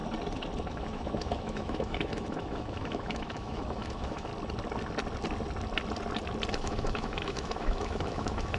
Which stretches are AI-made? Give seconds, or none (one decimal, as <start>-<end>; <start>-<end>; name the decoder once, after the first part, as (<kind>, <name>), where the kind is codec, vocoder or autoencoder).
0.7-4.3 (autoencoder, DAC-VAE); 6.5-8.6